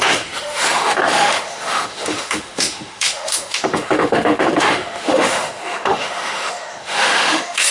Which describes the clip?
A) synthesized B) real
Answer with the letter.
A